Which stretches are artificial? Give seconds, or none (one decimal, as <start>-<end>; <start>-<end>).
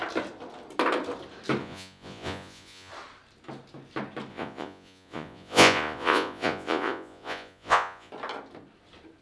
1.6-2.9; 4.3-8.1